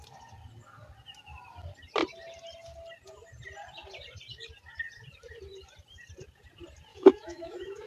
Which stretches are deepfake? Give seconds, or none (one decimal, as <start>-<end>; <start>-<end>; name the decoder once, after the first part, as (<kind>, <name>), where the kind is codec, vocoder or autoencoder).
6.9-7.9 (autoencoder, DAC-VAE)